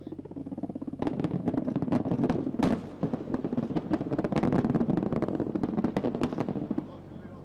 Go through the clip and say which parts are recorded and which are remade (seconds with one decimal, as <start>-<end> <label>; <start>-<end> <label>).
0.0-0.4 recorded; 0.4-1.5 remade; 1.5-7.4 recorded